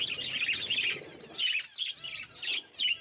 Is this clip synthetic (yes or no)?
no